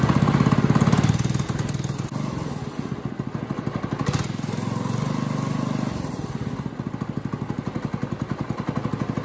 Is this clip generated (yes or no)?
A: no